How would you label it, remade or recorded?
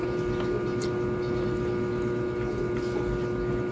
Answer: recorded